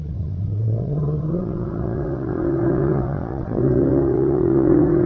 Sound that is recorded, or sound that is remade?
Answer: remade